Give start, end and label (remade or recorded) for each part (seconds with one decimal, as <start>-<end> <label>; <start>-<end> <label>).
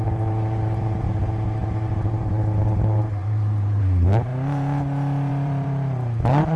0.0-4.3 remade; 4.3-5.3 recorded; 5.3-6.6 remade